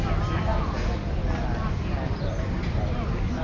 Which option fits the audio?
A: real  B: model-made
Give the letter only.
A